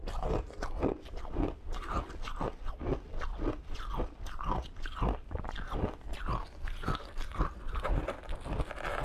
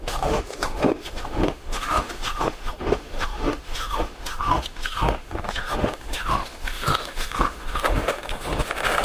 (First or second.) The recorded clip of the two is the first